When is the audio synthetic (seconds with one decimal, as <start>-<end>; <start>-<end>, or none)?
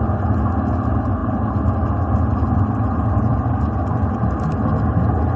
none